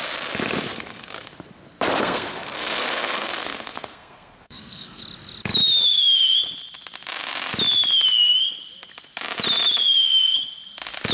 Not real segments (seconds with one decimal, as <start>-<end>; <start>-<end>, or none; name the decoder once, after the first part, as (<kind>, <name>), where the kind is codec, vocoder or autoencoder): 0.7-1.3 (codec, SNAC); 2.0-5.0